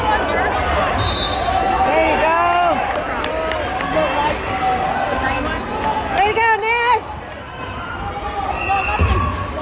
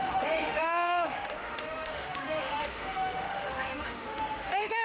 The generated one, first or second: second